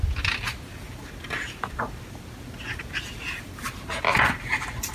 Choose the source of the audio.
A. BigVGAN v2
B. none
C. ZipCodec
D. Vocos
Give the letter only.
B